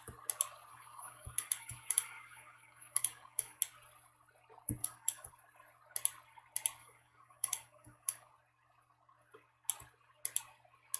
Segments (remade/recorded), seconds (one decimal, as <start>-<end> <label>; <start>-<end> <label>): 0.0-0.7 recorded; 0.7-3.6 remade; 3.6-4.8 recorded; 4.8-5.3 remade; 5.3-6.8 recorded; 6.8-8.3 remade; 8.3-11.0 recorded